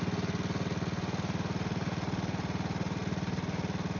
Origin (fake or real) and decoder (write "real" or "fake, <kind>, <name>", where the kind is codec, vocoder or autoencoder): real